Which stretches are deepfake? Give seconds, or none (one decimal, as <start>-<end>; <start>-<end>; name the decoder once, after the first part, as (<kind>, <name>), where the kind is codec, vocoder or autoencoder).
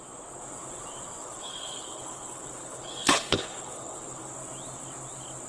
1.2-4.3 (codec, HILCodec)